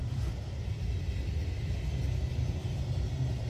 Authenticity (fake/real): real